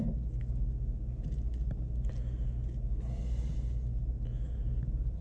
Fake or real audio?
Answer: real